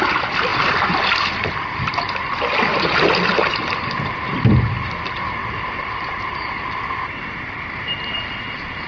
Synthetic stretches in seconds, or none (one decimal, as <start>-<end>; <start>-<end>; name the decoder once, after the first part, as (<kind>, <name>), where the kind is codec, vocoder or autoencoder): 5.4-6.2 (vocoder, BigVGAN v2)